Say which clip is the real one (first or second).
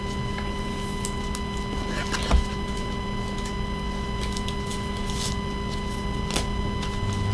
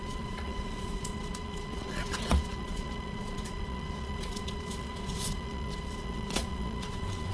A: first